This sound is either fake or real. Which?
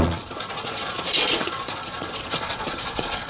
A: fake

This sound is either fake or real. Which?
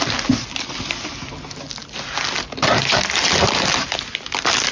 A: real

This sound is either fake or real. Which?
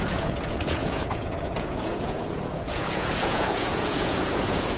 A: fake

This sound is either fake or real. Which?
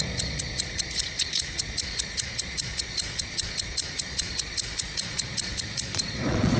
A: fake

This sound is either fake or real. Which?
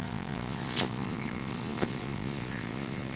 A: fake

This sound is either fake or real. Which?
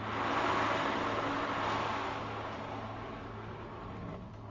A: real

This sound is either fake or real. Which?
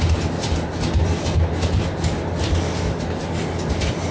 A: real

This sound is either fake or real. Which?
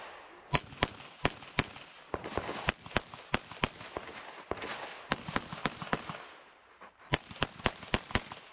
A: real